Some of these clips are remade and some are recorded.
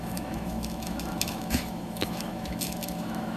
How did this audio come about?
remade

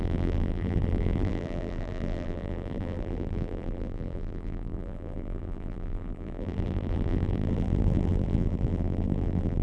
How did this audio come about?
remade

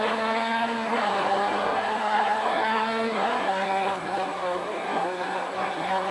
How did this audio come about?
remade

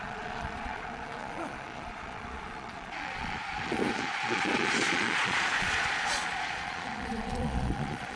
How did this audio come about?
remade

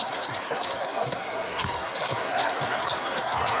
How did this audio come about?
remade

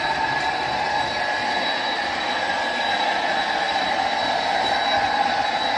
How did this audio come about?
recorded